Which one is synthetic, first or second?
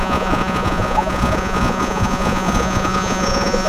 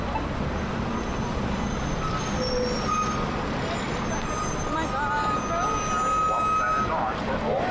first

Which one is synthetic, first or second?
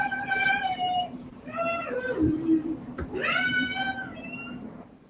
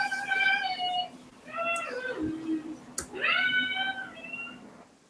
first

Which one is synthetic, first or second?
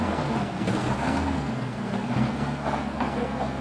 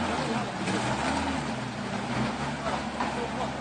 first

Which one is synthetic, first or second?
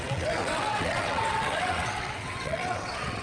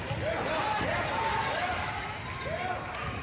first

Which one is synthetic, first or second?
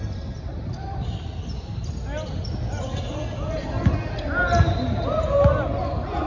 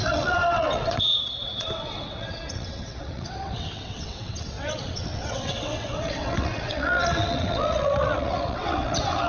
second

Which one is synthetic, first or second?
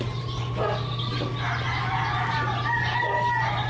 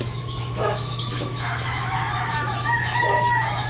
second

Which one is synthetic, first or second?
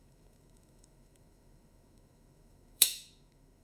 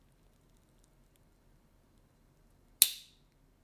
first